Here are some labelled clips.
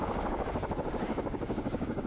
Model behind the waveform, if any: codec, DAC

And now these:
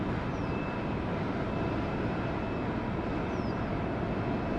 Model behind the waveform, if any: none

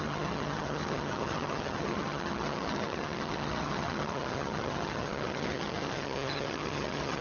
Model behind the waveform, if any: vocoder, HiFi-GAN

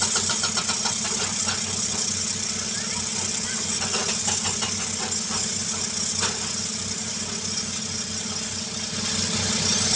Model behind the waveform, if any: none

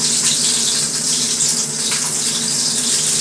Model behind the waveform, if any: none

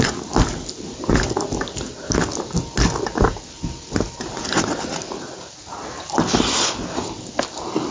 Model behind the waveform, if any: none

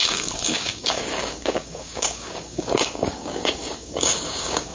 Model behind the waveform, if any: codec, DAC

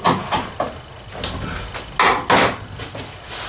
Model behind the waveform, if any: none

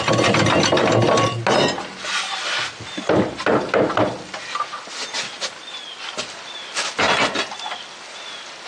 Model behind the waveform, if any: none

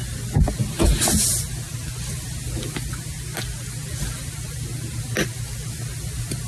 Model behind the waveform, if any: none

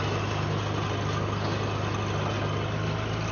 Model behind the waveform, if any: none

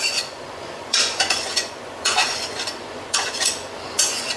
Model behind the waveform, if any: vocoder, Vocos